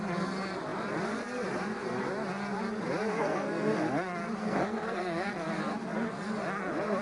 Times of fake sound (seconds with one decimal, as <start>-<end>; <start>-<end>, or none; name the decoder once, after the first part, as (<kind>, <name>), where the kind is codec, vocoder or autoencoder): 3.1-3.8 (codec, SNAC); 4.4-5.3